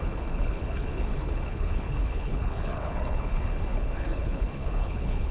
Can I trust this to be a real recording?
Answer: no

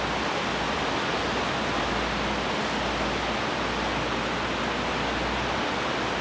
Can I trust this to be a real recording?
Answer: yes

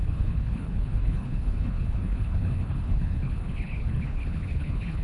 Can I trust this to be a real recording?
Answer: no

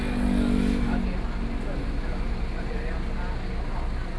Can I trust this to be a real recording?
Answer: yes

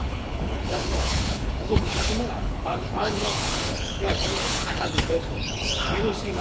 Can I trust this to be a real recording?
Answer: no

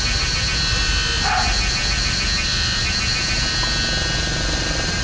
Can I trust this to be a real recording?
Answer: yes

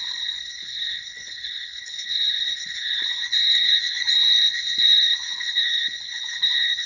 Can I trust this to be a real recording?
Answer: no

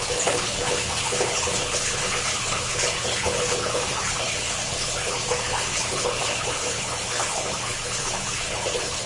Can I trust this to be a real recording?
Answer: no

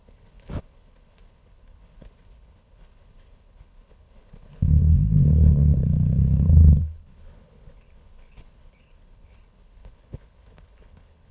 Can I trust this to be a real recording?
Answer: no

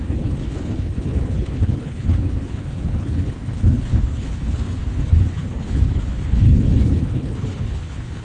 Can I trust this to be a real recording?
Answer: no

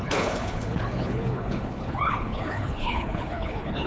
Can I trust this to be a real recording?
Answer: no